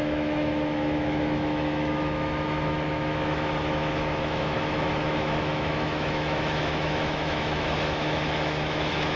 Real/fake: fake